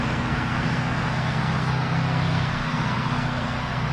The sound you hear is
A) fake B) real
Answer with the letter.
A